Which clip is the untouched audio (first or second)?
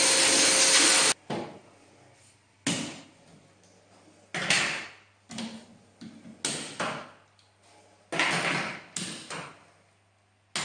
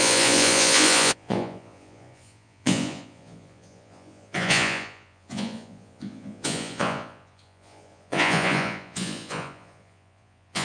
first